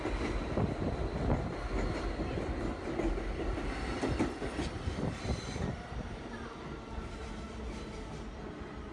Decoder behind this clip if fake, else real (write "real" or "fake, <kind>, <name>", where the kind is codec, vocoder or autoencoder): real